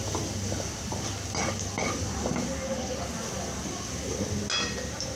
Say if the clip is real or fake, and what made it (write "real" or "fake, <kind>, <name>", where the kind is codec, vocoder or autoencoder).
real